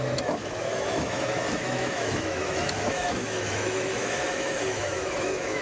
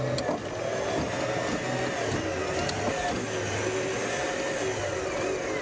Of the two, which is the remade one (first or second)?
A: first